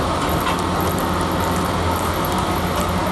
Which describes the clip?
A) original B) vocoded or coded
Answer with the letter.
A